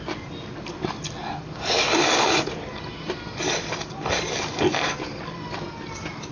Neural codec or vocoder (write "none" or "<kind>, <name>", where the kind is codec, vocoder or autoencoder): none